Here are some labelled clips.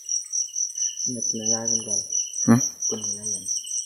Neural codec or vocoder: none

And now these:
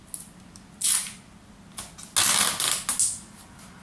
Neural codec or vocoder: none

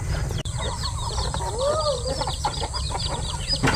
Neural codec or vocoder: none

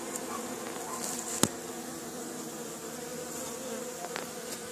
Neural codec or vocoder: none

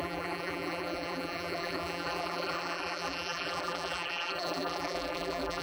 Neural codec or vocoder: vocoder, BigVGAN v2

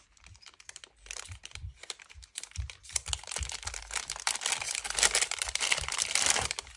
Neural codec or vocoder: vocoder, BigVGAN v2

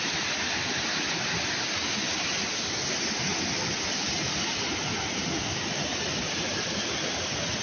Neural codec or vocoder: none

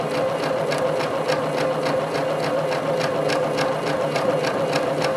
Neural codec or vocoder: none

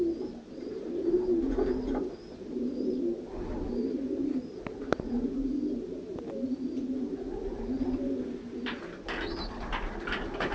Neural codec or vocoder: none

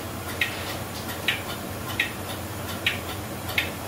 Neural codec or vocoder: vocoder, BigVGAN v2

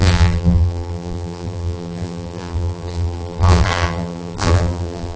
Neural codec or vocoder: vocoder, BigVGAN v2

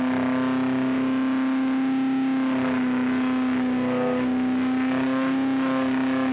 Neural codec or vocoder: none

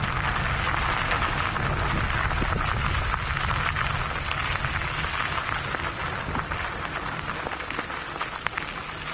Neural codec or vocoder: none